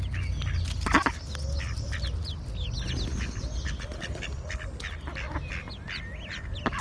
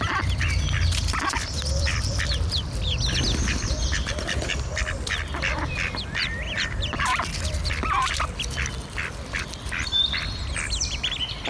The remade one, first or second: second